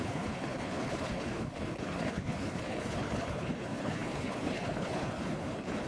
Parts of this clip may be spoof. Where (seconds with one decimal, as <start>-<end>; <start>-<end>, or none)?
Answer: 0.0-5.9